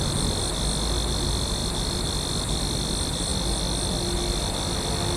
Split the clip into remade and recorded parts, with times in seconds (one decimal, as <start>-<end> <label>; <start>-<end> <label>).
0.0-5.2 recorded